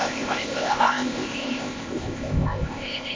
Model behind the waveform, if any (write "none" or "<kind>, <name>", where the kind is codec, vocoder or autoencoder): codec, ZipCodec